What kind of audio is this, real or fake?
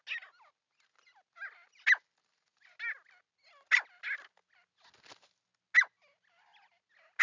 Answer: real